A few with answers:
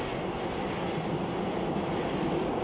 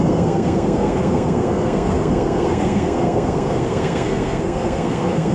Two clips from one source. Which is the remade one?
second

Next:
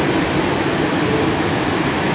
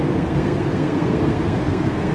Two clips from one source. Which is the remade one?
second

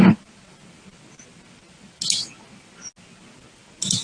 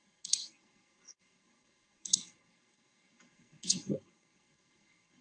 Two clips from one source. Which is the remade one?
second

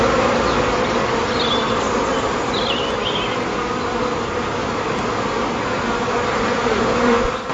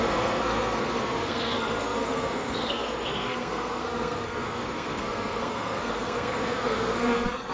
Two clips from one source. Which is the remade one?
second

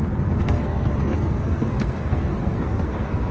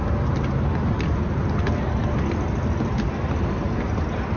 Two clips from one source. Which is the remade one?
first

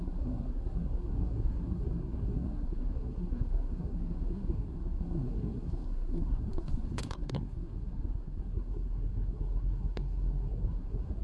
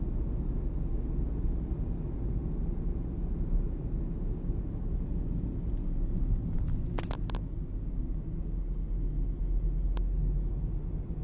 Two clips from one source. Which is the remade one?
first